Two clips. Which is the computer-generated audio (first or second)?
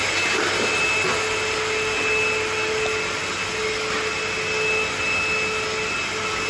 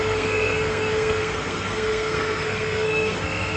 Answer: second